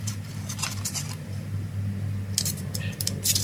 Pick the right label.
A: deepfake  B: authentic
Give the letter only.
B